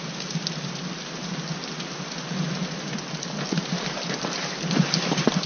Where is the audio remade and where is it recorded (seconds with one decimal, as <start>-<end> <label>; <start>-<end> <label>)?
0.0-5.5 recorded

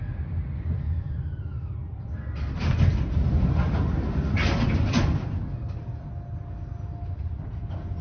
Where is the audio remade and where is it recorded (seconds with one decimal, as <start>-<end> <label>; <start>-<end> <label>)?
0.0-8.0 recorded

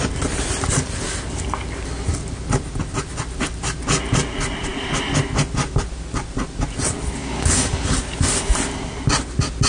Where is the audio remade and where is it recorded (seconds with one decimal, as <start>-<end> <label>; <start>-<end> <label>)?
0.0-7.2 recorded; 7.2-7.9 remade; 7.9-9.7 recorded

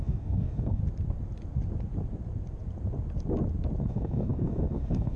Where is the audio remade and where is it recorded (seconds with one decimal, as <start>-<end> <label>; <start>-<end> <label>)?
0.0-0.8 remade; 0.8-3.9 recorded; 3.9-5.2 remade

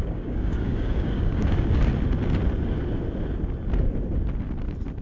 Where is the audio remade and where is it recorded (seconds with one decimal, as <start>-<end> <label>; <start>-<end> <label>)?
0.0-1.9 remade; 1.9-5.0 recorded

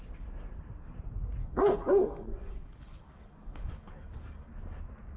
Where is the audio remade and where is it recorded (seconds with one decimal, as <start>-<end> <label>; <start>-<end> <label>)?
0.0-1.4 recorded; 1.4-4.5 remade; 4.5-5.2 recorded